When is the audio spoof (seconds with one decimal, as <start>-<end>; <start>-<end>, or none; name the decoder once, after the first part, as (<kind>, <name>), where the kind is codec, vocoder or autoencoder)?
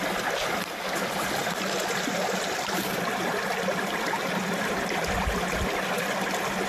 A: none